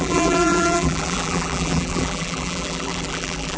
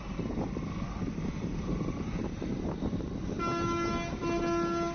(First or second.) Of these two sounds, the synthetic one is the first